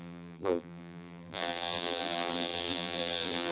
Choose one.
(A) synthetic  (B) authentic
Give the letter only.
A